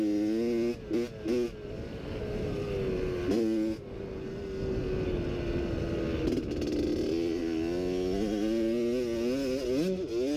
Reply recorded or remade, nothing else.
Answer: recorded